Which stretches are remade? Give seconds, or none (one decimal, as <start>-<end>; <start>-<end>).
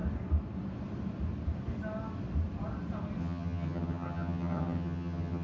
3.2-5.4